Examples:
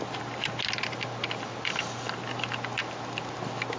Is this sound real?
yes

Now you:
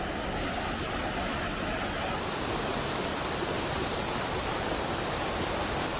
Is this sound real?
yes